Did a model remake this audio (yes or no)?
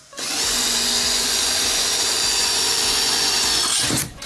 yes